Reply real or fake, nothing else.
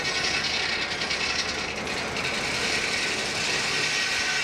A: real